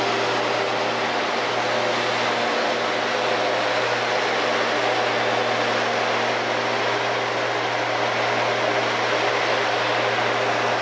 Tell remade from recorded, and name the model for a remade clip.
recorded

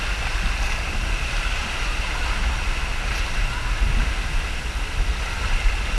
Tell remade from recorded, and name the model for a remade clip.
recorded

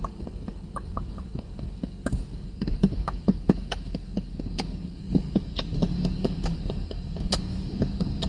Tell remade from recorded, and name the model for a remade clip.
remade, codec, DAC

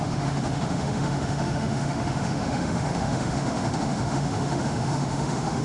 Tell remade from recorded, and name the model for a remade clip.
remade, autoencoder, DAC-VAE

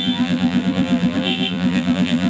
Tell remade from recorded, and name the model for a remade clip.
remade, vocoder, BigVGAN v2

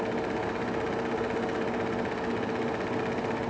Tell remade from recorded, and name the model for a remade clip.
recorded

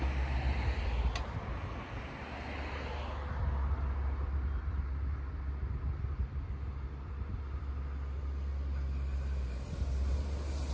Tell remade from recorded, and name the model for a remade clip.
recorded